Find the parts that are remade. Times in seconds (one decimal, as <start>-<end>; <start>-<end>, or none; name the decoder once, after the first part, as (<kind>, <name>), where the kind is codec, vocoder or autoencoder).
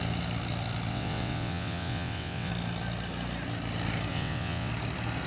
0.9-2.5 (vocoder, WaveNeXt); 4.1-4.7